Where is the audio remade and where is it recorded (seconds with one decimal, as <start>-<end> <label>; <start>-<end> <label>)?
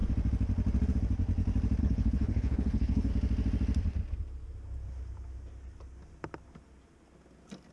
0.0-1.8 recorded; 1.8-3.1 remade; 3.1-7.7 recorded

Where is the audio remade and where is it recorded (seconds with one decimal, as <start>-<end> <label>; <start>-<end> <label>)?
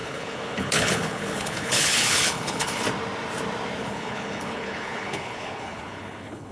0.0-2.8 remade; 2.8-3.8 recorded; 3.8-6.5 remade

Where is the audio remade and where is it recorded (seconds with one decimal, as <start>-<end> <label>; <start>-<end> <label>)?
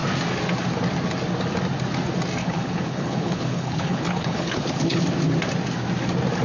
0.0-2.4 recorded; 2.4-5.0 remade; 5.0-6.4 recorded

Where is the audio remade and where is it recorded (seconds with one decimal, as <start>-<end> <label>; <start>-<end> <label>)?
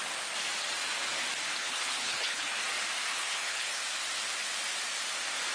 0.0-1.6 recorded; 1.6-2.6 remade; 2.6-3.1 recorded; 3.1-3.8 remade; 3.8-5.5 recorded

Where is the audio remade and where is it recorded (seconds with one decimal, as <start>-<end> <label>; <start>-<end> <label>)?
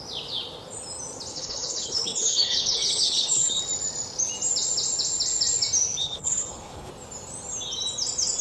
0.0-1.3 recorded; 1.3-3.6 remade; 3.6-6.0 recorded; 6.0-6.9 remade; 6.9-8.4 recorded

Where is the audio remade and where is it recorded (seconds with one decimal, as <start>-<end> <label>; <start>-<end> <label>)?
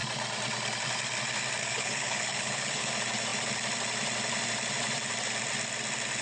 0.0-1.6 recorded; 1.6-2.9 remade; 2.9-6.2 recorded